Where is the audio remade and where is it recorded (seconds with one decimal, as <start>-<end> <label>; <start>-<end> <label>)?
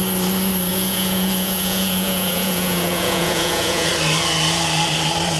0.0-0.7 recorded; 0.7-3.9 remade; 3.9-5.4 recorded